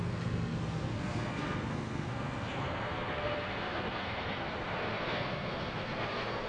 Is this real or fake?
fake